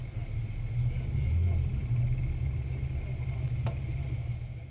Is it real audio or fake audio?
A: real